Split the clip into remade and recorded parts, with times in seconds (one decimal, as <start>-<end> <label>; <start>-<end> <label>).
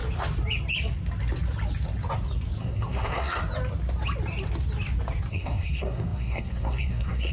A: 0.0-2.6 recorded; 2.6-3.4 remade; 3.4-5.3 recorded; 5.3-7.3 remade